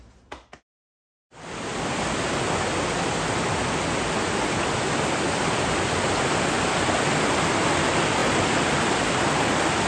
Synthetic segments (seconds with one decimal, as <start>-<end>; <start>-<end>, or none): none